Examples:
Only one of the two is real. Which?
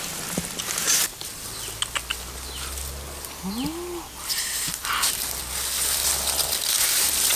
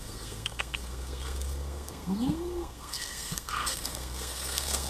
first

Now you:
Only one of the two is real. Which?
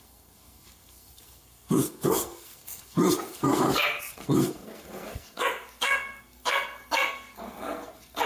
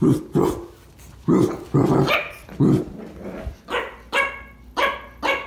second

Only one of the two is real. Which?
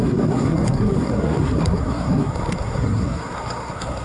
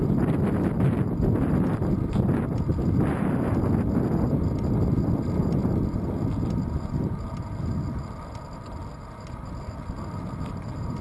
second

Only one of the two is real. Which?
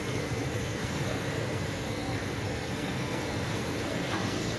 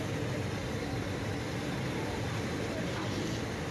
second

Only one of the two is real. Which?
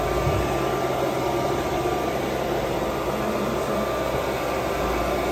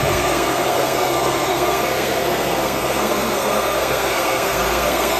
first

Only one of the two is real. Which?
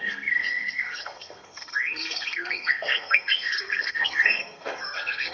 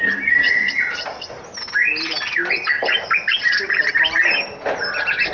second